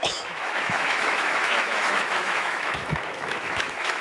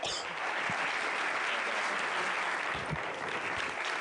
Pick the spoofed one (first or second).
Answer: first